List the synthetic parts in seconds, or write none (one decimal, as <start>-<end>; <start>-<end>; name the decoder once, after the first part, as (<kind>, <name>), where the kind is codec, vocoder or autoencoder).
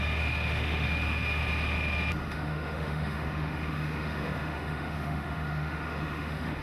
0.0-1.4 (autoencoder, DAC-VAE); 2.2-6.6